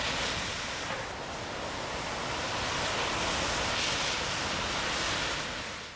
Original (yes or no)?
yes